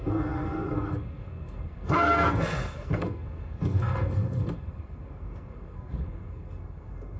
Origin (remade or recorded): remade